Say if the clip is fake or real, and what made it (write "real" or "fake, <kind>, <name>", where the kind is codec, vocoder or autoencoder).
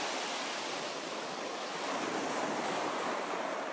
real